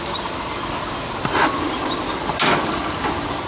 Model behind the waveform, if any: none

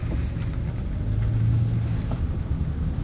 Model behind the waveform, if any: none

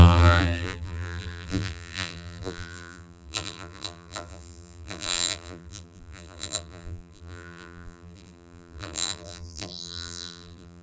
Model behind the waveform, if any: vocoder, BigVGAN v2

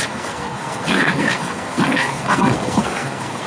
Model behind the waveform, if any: codec, SNAC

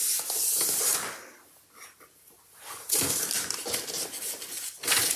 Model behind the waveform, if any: none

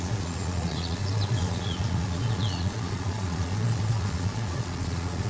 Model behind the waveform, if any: vocoder, Vocos